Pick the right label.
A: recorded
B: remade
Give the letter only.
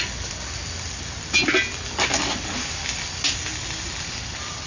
A